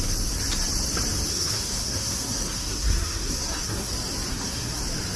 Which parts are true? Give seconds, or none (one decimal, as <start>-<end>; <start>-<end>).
0.0-1.3; 3.9-4.3; 4.8-5.2